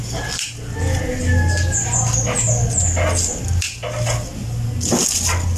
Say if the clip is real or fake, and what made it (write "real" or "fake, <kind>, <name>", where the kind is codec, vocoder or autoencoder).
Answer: real